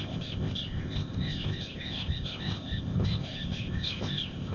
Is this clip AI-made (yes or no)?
yes